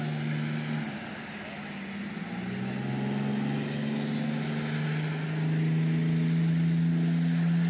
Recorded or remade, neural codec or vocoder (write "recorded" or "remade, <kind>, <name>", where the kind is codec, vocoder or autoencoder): recorded